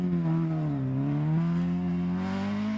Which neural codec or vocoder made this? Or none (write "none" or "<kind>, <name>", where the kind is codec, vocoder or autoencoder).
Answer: none